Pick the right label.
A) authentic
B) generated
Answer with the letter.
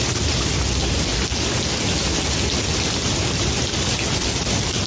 A